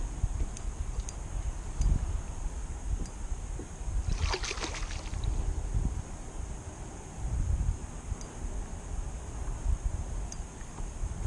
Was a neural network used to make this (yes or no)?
no